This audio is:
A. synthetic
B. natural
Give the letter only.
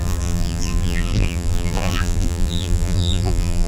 A